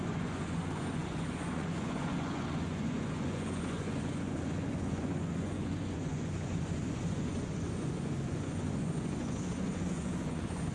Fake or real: fake